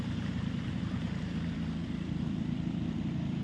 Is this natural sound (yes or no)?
no